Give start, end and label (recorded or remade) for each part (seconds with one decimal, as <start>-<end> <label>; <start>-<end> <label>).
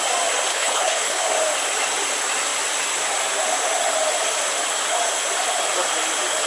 0.0-0.5 recorded; 0.5-1.2 remade; 1.2-6.5 recorded